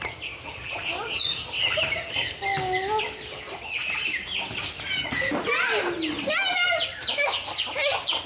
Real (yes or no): yes